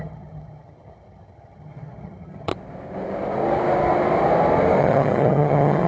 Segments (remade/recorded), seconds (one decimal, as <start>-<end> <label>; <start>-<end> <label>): 0.0-2.5 remade; 2.5-4.8 recorded; 4.8-5.9 remade